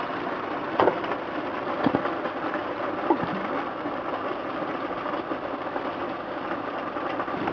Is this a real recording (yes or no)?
no